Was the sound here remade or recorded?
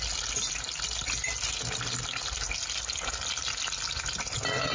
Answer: recorded